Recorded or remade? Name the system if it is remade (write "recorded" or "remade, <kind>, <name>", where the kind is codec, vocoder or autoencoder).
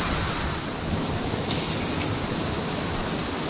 recorded